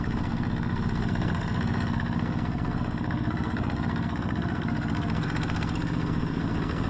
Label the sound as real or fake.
fake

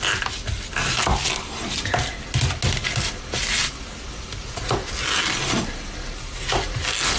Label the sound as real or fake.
real